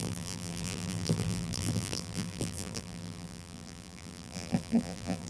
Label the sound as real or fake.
fake